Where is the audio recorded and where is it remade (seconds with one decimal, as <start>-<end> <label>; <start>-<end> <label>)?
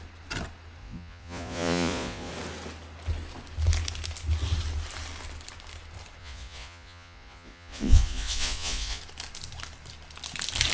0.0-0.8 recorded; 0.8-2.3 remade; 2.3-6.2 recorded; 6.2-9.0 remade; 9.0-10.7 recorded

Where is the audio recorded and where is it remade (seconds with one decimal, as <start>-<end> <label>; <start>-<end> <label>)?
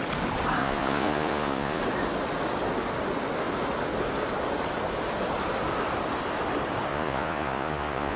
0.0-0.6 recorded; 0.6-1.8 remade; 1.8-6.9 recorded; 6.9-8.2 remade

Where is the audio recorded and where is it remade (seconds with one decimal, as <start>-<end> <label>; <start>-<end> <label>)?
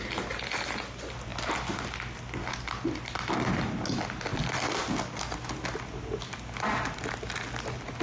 0.0-8.0 recorded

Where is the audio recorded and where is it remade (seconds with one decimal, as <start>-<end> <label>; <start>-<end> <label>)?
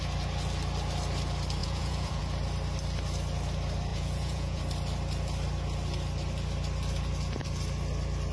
0.0-1.6 recorded; 1.6-2.2 remade; 2.2-3.9 recorded; 3.9-4.6 remade; 4.6-8.3 recorded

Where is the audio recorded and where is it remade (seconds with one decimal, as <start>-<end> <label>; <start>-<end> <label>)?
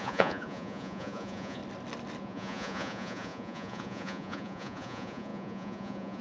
0.0-1.6 remade; 1.6-2.2 recorded; 2.2-6.2 remade